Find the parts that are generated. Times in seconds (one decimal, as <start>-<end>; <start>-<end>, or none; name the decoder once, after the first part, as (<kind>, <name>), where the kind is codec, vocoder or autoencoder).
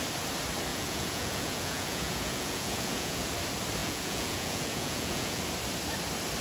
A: 0.7-3.3 (vocoder, Vocos); 3.8-5.4